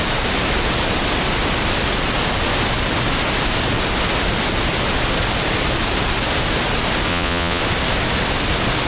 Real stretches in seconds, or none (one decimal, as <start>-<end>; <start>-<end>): 0.0-7.1; 7.6-8.9